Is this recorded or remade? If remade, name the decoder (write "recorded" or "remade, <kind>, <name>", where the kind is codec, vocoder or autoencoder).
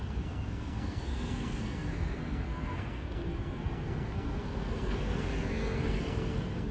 remade, codec, SNAC